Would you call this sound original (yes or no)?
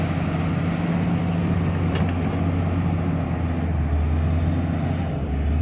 yes